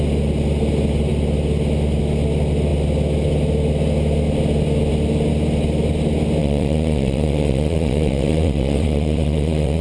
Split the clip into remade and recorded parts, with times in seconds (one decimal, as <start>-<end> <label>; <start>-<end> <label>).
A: 0.0-6.4 recorded; 6.4-9.8 remade

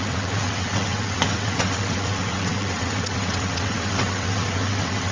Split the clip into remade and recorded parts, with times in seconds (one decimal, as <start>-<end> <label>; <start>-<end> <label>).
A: 0.0-5.1 remade

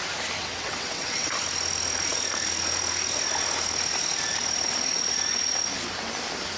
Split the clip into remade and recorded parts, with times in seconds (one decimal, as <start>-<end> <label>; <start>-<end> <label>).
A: 0.0-0.4 recorded; 0.4-1.3 remade; 1.3-6.6 recorded

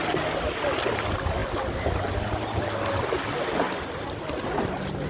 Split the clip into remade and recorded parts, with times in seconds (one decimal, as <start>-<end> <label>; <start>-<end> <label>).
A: 0.0-5.1 recorded

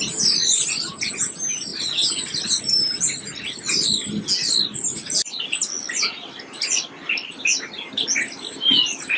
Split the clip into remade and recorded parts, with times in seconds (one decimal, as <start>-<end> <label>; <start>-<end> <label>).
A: 0.0-9.2 recorded

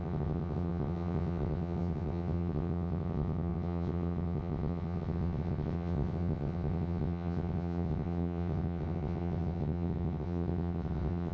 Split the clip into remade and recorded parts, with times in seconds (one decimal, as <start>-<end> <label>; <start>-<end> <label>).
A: 0.0-11.3 remade